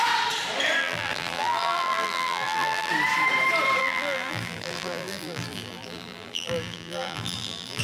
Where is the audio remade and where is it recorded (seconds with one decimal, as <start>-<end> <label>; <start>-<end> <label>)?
0.0-0.8 recorded; 0.8-2.9 remade; 2.9-3.8 recorded; 3.8-7.8 remade